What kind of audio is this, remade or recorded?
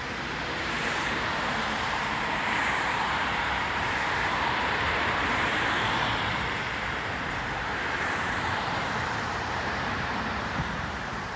remade